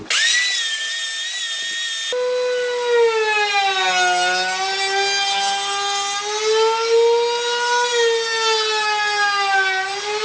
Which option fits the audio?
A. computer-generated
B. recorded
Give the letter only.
B